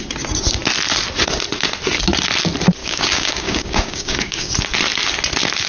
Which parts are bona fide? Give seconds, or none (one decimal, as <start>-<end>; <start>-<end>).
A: 0.0-2.8; 4.5-5.7